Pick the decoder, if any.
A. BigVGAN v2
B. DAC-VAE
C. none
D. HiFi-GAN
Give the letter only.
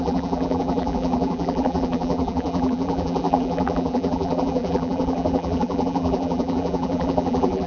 A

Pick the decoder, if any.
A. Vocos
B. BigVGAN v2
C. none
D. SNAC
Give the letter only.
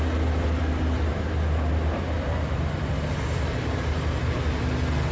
C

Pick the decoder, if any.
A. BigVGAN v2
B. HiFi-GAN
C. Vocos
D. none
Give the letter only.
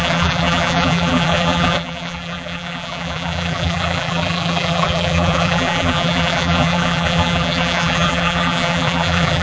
A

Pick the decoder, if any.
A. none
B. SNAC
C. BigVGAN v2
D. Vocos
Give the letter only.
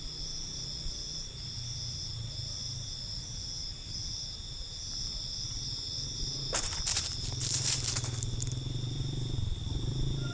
C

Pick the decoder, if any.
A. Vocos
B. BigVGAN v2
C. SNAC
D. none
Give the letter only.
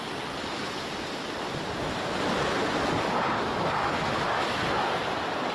D